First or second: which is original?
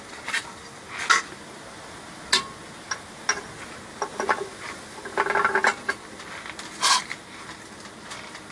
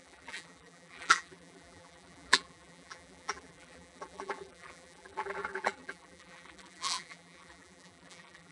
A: first